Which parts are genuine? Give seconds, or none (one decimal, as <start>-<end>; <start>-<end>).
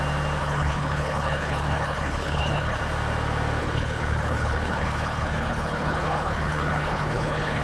0.0-0.4; 2.8-3.6